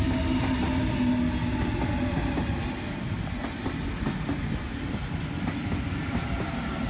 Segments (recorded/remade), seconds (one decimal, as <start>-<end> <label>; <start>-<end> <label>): 0.0-6.9 recorded